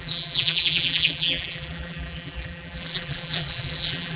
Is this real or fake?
fake